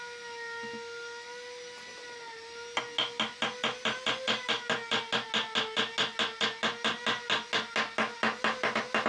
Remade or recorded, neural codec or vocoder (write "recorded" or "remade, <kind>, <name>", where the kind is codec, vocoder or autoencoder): recorded